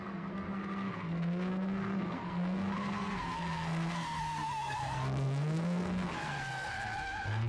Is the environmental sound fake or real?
fake